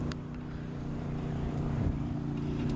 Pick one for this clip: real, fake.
fake